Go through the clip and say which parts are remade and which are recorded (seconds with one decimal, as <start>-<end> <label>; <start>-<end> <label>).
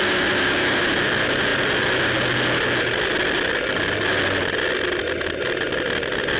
0.0-6.4 recorded